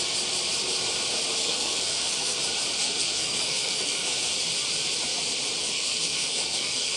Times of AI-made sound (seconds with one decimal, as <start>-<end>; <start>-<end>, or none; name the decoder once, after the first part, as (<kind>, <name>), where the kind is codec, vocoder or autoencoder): 1.4-2.4 (codec, SNAC); 2.8-4.3; 5.6-7.0